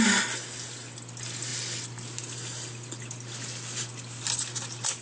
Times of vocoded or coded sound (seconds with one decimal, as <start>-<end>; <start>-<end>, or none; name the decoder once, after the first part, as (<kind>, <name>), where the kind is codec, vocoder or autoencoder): none